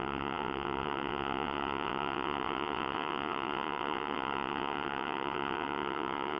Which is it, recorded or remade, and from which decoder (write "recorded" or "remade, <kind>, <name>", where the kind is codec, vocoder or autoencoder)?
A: remade, vocoder, WaveNeXt